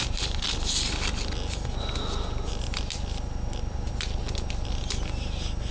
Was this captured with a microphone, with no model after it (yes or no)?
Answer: yes